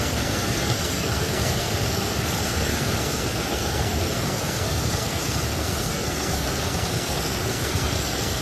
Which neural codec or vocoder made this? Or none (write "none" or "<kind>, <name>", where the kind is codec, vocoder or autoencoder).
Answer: codec, SNAC